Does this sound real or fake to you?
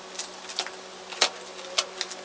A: real